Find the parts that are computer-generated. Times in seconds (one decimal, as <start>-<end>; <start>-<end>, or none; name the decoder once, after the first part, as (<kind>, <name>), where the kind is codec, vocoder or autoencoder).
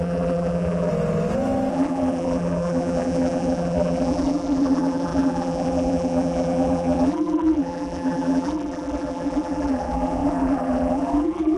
0.0-0.9 (vocoder, BigVGAN v2); 1.7-11.6